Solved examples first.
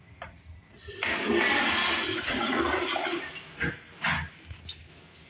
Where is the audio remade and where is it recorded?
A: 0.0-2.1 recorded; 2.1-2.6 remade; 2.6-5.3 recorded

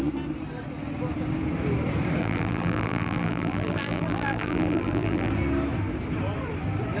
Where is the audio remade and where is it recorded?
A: 0.0-2.2 recorded; 2.2-5.3 remade; 5.3-7.0 recorded